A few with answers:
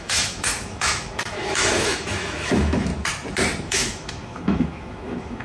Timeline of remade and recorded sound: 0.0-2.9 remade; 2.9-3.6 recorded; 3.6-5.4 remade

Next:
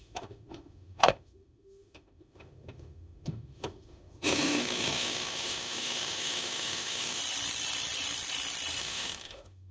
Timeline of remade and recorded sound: 0.0-7.2 remade; 7.2-8.8 recorded; 8.8-9.7 remade

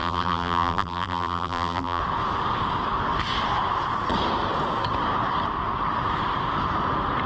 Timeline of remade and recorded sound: 0.0-2.0 remade; 2.0-7.3 recorded

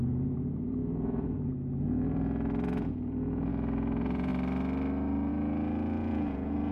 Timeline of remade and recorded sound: 0.0-4.3 remade; 4.3-5.3 recorded; 5.3-6.7 remade